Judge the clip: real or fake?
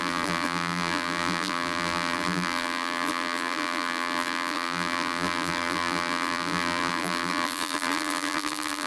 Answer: fake